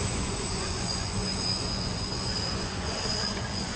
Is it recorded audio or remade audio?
remade